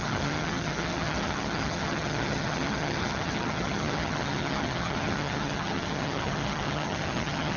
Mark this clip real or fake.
fake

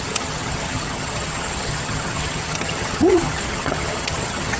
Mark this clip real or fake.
fake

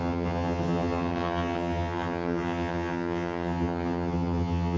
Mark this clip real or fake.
fake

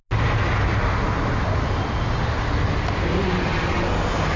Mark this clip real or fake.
real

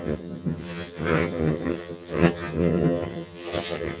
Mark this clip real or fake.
fake